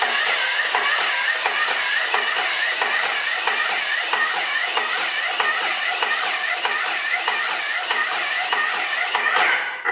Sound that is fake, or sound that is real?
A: real